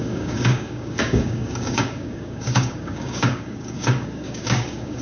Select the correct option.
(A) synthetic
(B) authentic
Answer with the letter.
A